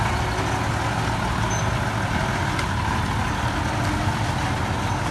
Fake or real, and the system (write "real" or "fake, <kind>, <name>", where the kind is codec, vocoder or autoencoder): real